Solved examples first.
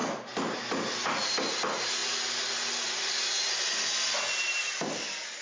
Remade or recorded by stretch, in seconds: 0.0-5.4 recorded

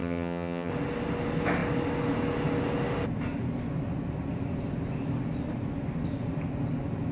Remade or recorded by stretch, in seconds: 0.0-0.7 remade; 0.7-7.1 recorded

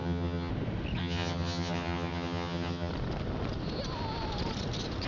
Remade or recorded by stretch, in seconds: 0.0-0.5 remade; 0.5-1.0 recorded; 1.0-2.9 remade; 2.9-5.1 recorded

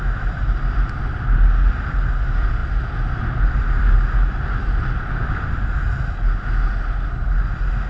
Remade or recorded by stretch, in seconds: 0.0-7.9 recorded

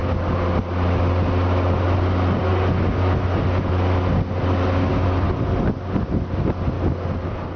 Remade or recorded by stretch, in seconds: 0.0-7.6 recorded

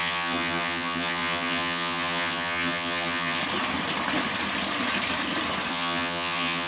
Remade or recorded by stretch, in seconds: 0.0-3.4 remade; 3.4-5.7 recorded; 5.7-6.7 remade

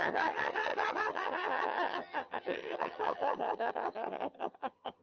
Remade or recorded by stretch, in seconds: 0.0-5.0 remade

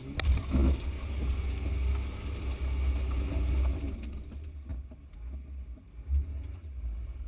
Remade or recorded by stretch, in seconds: 0.0-7.3 recorded